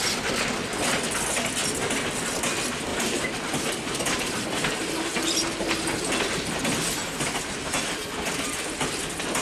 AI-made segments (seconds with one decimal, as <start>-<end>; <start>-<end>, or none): 2.9-6.1; 7.0-8.3